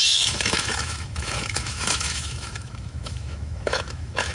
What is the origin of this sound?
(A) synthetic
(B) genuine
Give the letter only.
A